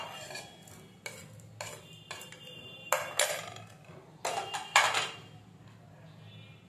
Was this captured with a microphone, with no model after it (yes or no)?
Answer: yes